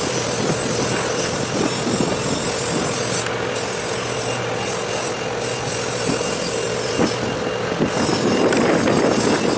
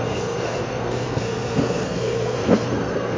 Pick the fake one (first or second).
second